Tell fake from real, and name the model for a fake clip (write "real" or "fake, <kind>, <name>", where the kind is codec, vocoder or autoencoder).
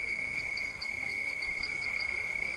fake, codec, SNAC